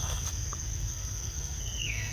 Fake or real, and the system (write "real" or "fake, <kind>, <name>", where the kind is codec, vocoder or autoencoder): fake, codec, SNAC